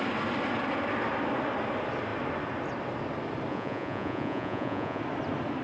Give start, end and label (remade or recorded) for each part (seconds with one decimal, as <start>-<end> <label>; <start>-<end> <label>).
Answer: 0.0-3.5 recorded; 3.5-5.0 remade; 5.0-5.6 recorded